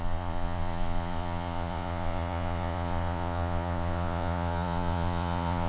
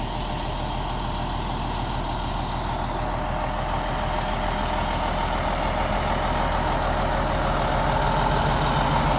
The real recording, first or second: second